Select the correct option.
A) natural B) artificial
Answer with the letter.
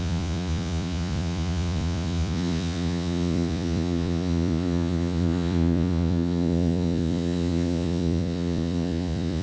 B